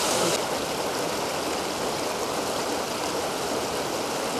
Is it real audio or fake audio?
real